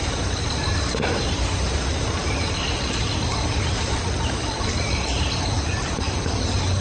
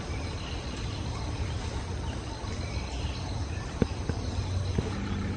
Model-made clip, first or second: first